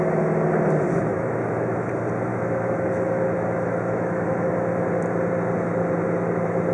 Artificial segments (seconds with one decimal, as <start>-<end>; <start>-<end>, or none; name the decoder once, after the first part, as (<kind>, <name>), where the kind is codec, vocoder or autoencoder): 1.1-1.9 (autoencoder, DAC-VAE); 2.3-4.5